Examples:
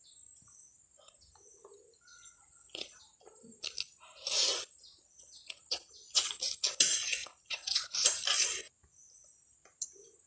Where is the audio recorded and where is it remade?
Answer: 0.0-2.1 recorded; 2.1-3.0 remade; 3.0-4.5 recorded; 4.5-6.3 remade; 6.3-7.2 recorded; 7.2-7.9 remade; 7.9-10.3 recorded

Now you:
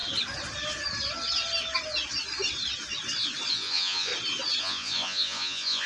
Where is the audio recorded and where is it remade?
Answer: 0.0-3.5 recorded; 3.5-4.1 remade; 4.1-4.6 recorded; 4.6-5.9 remade

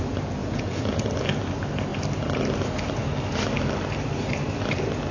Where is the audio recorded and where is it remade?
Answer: 0.0-0.4 recorded; 0.4-1.0 remade; 1.0-5.1 recorded

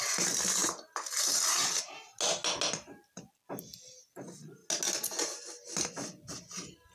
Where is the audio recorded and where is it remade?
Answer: 0.0-6.9 recorded

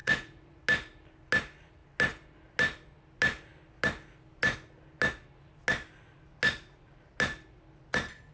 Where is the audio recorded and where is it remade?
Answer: 0.0-0.6 remade; 0.6-8.3 recorded

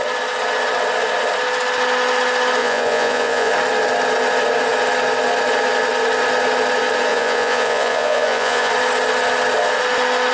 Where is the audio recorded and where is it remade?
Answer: 0.0-2.6 recorded; 2.6-3.5 remade; 3.5-7.1 recorded; 7.1-8.7 remade; 8.7-10.3 recorded